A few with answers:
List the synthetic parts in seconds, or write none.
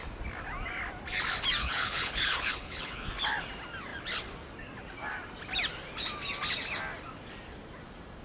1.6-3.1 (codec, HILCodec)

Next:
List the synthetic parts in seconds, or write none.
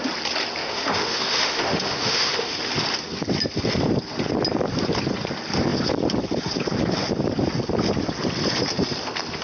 0.6-2.7 (autoencoder, DAC-VAE)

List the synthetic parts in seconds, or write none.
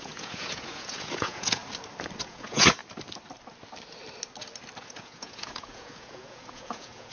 0.0-1.6 (vocoder, Vocos); 2.2-2.8; 4.8-7.1